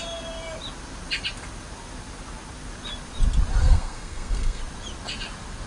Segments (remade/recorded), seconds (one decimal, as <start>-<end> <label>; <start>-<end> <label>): 0.0-3.6 recorded; 3.6-4.6 remade; 4.6-5.7 recorded